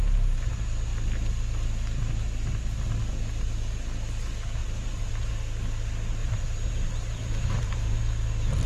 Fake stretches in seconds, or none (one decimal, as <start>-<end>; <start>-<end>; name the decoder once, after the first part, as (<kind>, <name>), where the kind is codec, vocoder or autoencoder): 4.6-5.1 (vocoder, BigVGAN v2); 6.2-8.0